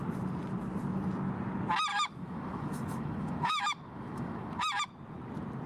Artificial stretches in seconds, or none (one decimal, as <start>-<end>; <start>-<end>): 1.9-4.6